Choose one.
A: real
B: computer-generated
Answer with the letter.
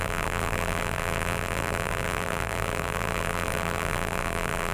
B